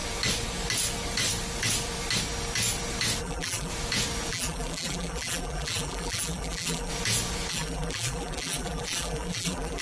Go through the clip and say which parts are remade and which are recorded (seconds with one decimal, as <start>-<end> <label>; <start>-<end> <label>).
0.0-3.2 recorded; 3.2-3.7 remade; 3.7-4.3 recorded; 4.3-6.9 remade; 6.9-7.5 recorded; 7.5-9.8 remade